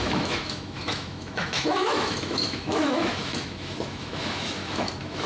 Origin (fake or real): fake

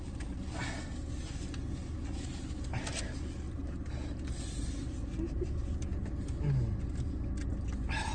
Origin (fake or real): real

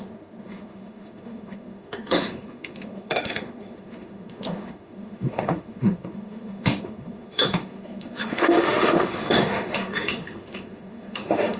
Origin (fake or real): fake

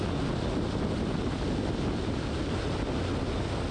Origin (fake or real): real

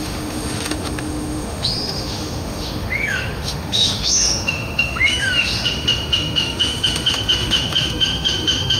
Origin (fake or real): fake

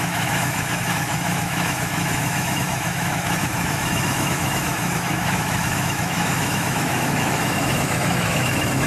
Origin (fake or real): fake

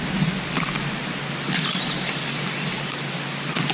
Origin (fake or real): real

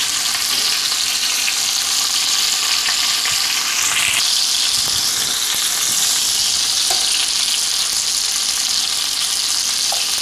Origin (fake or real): real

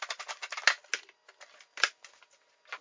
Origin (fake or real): real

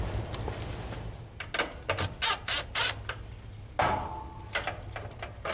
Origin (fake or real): real